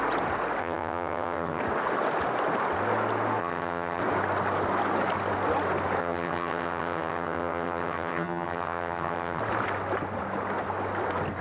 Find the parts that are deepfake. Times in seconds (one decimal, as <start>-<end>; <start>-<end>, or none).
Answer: 0.6-1.6; 3.4-4.0; 6.0-9.4